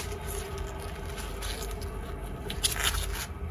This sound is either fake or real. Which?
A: real